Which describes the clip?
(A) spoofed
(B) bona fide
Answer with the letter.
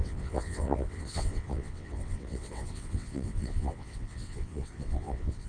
A